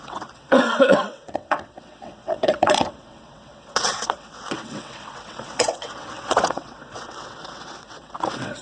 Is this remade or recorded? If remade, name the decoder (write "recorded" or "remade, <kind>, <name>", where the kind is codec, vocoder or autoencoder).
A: remade, vocoder, WaveNeXt